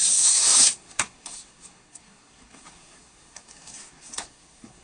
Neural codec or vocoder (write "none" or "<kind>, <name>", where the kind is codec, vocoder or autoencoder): codec, SNAC